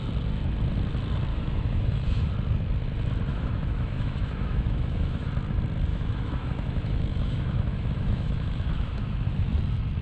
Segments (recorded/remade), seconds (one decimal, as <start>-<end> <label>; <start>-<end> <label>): 0.0-1.3 recorded; 1.3-2.3 remade; 2.3-3.3 recorded; 3.3-5.3 remade; 5.3-5.9 recorded; 5.9-9.5 remade; 9.5-10.0 recorded